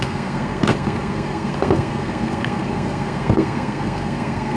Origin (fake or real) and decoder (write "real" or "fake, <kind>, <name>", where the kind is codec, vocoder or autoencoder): fake, codec, SNAC